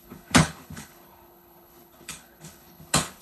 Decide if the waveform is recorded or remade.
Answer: remade